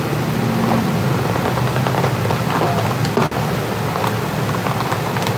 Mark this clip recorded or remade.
recorded